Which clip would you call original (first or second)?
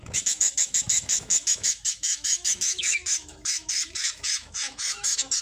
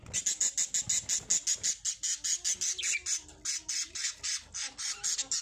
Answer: second